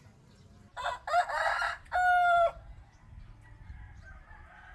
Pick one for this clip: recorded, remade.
recorded